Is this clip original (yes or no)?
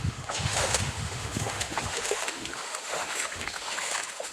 no